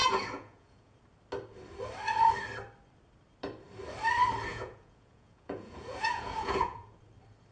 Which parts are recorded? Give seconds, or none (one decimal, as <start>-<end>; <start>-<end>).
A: 1.0-4.5; 7.0-7.5